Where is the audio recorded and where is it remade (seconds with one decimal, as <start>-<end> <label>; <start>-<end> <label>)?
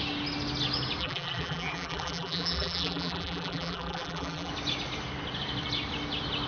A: 0.0-1.0 recorded; 1.0-4.5 remade; 4.5-6.5 recorded